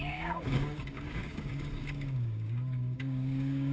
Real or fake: fake